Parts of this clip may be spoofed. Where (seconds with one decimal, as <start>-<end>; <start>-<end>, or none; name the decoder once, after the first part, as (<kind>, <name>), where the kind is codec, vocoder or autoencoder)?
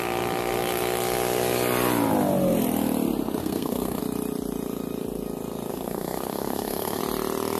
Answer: 3.4-4.0 (codec, SNAC); 5.7-7.0